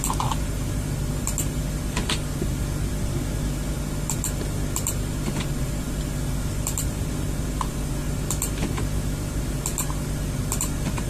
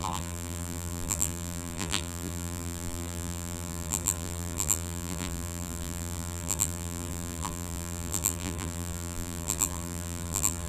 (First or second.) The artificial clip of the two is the second